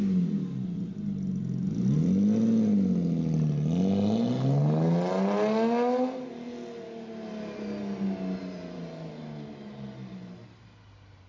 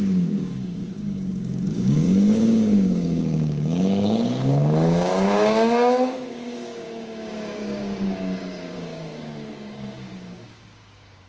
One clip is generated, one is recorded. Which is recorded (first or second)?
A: first